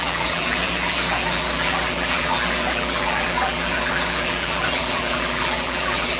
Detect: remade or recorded remade